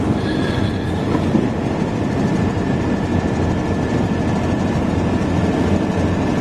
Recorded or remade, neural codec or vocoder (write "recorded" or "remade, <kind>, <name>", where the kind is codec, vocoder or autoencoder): recorded